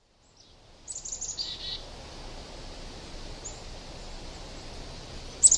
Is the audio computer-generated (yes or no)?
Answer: no